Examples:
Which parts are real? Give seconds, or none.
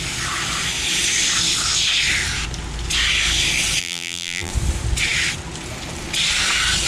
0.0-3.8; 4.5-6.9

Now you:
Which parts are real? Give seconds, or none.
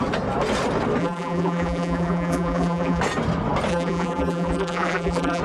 0.0-1.0; 3.0-3.7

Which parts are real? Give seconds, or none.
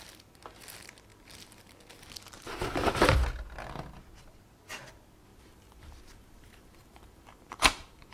0.0-5.3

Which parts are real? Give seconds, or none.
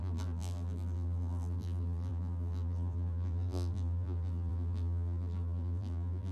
none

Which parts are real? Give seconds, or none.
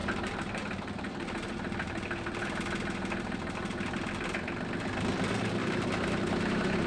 4.1-5.6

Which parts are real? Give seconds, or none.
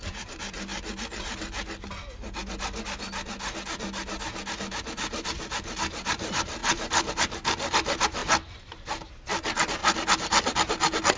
0.7-4.5; 8.2-9.1; 9.8-11.2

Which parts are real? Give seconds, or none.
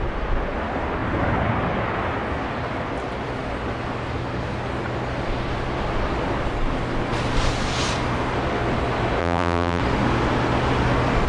0.0-9.2; 9.8-11.3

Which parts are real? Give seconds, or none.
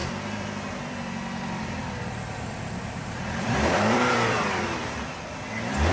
none